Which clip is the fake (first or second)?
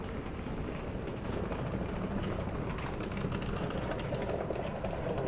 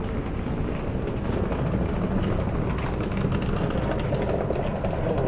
first